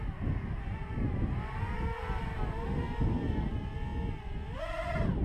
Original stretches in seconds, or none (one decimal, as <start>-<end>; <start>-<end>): 0.0-0.8; 1.7-5.2